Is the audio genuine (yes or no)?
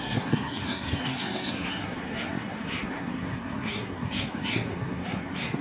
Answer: no